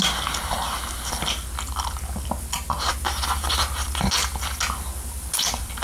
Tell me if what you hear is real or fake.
real